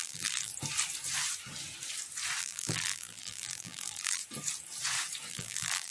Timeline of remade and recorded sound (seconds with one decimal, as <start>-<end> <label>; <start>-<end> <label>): 0.0-0.5 remade; 0.5-2.4 recorded; 2.4-4.2 remade; 4.2-5.3 recorded; 5.3-5.9 remade